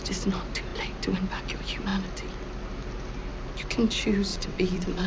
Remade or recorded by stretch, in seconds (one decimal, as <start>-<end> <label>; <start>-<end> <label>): 0.0-4.3 recorded; 4.3-5.1 remade